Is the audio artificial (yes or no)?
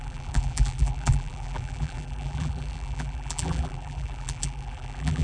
yes